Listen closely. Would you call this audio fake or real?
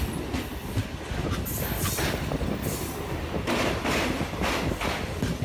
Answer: real